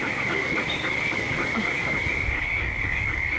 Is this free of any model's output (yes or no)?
no